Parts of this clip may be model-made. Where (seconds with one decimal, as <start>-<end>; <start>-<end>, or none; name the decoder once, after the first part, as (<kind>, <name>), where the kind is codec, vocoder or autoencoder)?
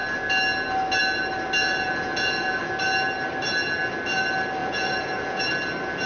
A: 1.6-2.7 (vocoder, Vocos); 4.6-5.4